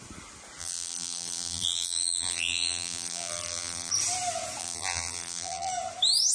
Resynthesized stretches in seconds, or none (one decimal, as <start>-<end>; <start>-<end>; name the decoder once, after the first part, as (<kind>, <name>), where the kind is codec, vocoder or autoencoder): 0.6-3.9 (vocoder, BigVGAN v2); 4.6-5.7

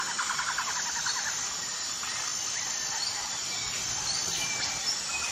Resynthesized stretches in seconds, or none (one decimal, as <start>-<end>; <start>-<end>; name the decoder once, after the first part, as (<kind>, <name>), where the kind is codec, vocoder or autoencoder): none

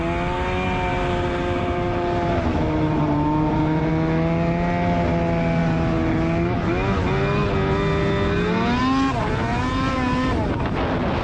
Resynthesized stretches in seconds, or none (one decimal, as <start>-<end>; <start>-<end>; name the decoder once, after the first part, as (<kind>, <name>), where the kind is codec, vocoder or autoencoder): 0.9-3.9 (vocoder, BigVGAN v2)

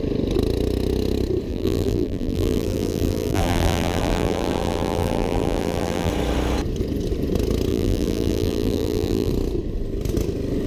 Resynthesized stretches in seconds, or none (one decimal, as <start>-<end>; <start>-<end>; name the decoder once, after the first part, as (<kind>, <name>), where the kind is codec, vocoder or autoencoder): 1.5-6.1 (vocoder, BigVGAN v2); 7.7-9.3

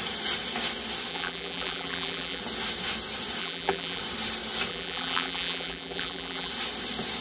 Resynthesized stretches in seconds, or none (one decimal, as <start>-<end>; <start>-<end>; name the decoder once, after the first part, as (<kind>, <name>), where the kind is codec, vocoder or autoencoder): 1.1-2.4 (vocoder, BigVGAN v2); 3.4-4.0; 4.7-6.5

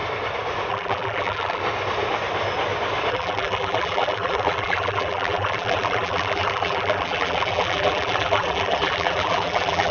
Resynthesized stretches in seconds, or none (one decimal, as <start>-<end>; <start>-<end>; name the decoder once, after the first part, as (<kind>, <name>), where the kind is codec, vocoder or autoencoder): 0.7-1.6 (vocoder, BigVGAN v2); 3.1-9.9

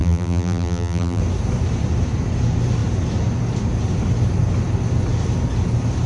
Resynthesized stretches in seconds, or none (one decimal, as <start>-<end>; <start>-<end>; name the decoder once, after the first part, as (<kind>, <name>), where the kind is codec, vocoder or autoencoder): 0.0-1.2 (vocoder, BigVGAN v2)

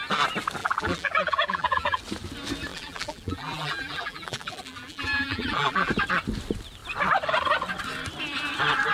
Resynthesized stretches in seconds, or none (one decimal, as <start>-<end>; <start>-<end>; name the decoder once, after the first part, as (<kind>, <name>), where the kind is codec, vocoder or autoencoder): 0.6-2.0 (vocoder, BigVGAN v2); 2.7-5.9